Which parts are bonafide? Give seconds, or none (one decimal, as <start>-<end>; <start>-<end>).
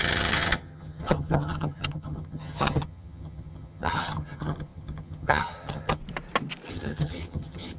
6.0-6.7